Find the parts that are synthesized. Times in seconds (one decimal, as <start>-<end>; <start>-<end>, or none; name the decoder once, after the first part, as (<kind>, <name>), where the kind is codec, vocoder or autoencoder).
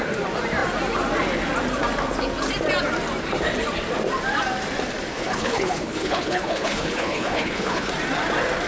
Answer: 5.1-7.9 (codec, HILCodec)